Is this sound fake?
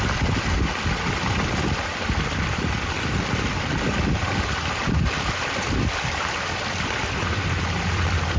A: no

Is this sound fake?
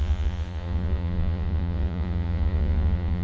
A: yes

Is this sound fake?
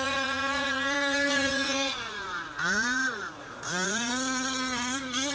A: yes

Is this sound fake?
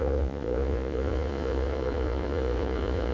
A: yes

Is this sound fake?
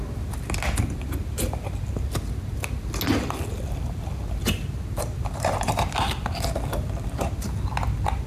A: no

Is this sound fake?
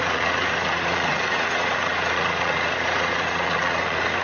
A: yes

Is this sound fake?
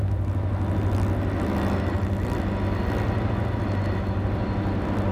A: no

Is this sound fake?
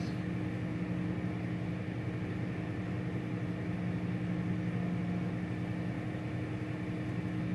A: no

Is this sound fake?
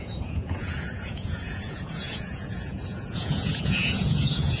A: yes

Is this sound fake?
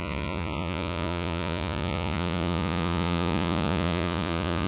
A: yes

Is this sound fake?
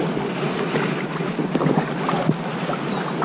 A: no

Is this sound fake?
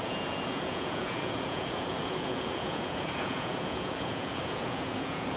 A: yes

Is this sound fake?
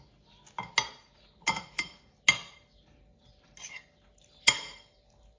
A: no